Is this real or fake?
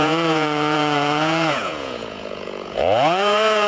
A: fake